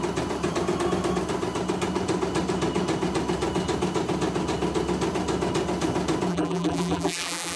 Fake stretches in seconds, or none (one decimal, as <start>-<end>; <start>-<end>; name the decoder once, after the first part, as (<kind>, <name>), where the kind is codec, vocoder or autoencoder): 6.3-7.6 (vocoder, BigVGAN v2)